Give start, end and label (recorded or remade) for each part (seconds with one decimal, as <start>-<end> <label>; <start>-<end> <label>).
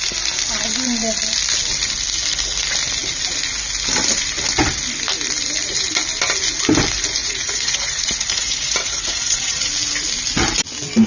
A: 0.0-7.2 recorded; 7.2-9.7 remade; 9.7-11.1 recorded